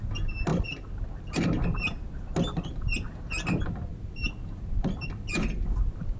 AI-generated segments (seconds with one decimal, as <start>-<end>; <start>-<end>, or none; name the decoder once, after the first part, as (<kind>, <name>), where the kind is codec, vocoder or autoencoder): none